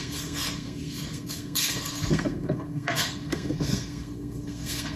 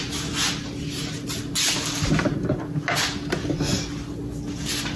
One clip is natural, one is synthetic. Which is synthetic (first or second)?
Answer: first